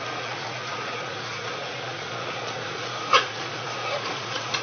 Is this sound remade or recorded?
remade